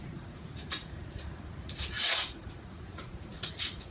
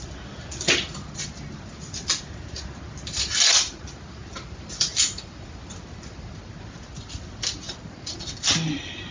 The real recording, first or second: second